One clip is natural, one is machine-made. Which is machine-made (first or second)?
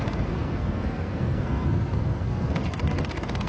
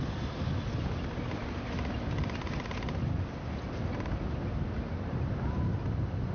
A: first